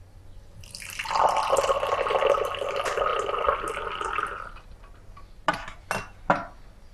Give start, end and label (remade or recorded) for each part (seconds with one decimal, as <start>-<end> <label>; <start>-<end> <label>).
0.0-6.9 recorded